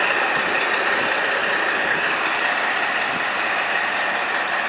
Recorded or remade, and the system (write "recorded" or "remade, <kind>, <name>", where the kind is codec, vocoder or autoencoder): recorded